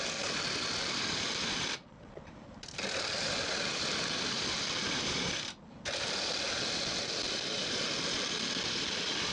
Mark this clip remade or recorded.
remade